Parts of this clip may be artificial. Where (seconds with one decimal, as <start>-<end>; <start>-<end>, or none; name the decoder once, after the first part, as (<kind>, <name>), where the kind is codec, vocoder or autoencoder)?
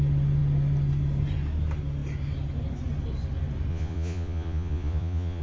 3.7-5.4 (vocoder, Vocos)